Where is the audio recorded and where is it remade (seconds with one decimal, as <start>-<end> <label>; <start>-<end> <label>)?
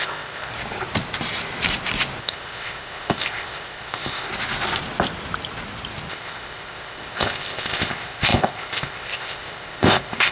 0.0-0.5 remade; 0.5-2.2 recorded; 2.2-4.3 remade; 4.3-6.1 recorded; 6.1-10.3 remade